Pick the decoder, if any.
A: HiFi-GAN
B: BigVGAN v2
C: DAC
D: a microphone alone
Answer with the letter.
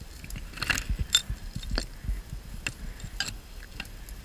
D